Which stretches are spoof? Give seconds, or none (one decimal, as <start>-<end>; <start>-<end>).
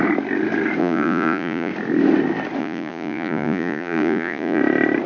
0.8-1.7; 2.6-4.6